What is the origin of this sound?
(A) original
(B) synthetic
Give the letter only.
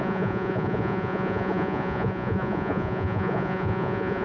B